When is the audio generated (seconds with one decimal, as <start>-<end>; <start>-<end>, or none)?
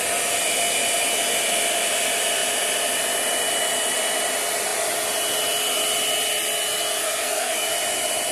7.0-7.7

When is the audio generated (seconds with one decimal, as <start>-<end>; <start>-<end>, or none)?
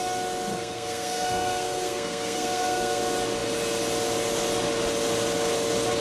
0.5-3.0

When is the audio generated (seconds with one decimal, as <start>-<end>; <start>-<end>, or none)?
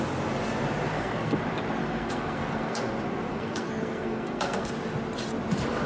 0.9-1.4; 1.8-2.9; 3.3-4.7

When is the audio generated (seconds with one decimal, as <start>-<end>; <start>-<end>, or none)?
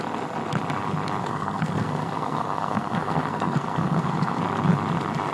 1.2-4.4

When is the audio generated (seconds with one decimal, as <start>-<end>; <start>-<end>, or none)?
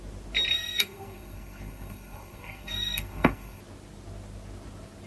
0.5-3.6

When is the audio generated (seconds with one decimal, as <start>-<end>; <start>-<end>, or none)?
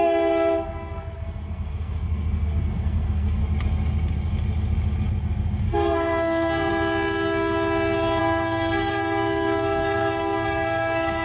0.0-3.4; 5.6-6.7; 8.2-11.2